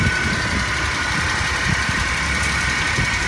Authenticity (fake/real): fake